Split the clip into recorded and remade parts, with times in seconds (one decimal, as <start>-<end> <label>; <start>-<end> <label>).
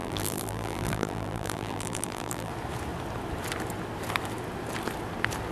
0.0-2.5 remade; 2.5-5.5 recorded